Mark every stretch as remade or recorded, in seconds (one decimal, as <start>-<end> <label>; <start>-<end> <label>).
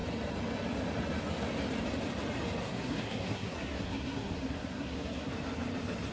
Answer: 0.0-2.6 recorded; 2.6-5.3 remade; 5.3-6.1 recorded